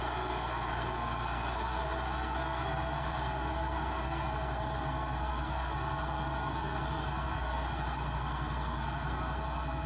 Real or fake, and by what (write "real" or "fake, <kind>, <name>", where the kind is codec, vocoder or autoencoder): fake, codec, SNAC